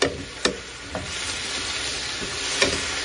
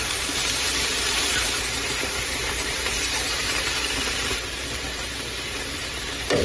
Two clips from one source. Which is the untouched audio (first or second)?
first